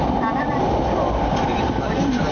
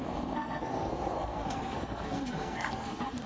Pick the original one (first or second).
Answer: first